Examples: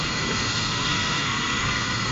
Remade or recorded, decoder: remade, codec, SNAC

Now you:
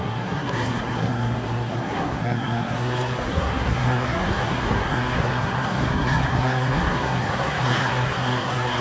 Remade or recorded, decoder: remade, codec, SNAC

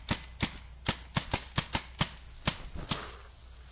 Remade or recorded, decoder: recorded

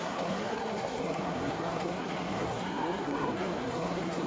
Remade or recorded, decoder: remade, codec, SNAC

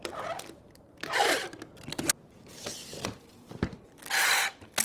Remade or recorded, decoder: recorded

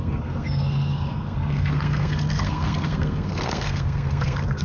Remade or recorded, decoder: remade, codec, SNAC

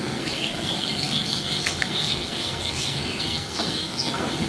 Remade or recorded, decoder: remade, codec, SNAC